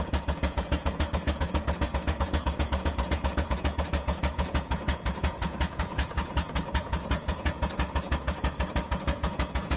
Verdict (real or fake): fake